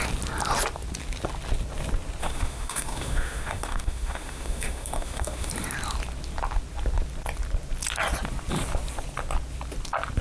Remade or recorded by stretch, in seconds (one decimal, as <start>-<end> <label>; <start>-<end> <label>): 0.0-2.2 recorded; 2.2-5.5 remade; 5.5-10.2 recorded